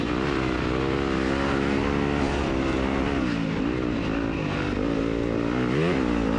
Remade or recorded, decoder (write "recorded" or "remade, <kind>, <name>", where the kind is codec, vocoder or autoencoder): recorded